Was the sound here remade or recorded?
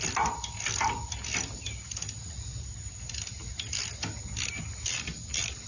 recorded